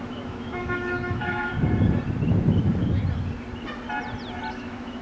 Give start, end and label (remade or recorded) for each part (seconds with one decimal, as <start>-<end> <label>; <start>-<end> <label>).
0.0-1.5 remade; 1.5-4.5 recorded; 4.5-5.0 remade